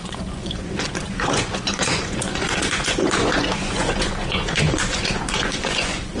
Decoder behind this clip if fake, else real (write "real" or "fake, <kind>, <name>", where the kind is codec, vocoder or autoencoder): fake, vocoder, Vocos